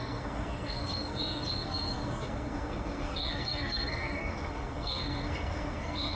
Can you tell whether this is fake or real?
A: fake